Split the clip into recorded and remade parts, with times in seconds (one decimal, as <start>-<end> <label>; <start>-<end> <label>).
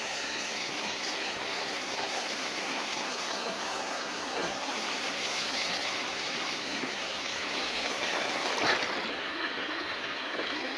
0.0-8.5 remade; 8.5-9.1 recorded; 9.1-10.8 remade